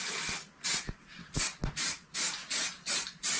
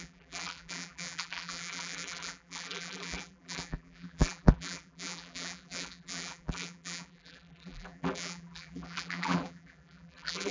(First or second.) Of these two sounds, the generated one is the second